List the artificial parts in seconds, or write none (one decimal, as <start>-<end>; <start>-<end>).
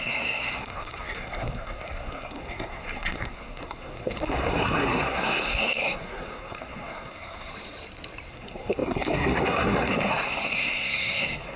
0.0-7.5; 8.3-11.6